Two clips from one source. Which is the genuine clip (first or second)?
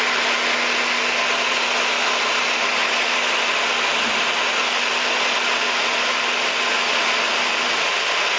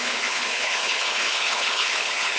first